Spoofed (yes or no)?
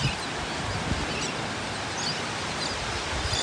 no